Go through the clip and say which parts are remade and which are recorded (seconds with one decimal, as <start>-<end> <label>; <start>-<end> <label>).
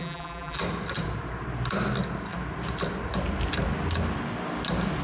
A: 0.0-0.6 remade; 0.6-5.0 recorded